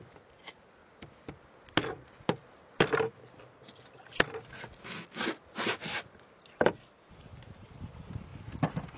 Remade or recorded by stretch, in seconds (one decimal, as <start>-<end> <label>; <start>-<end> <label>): 0.0-9.0 recorded